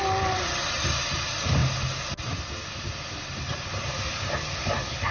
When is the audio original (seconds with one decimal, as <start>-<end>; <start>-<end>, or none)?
0.0-5.1